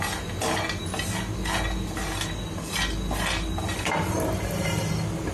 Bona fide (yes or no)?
yes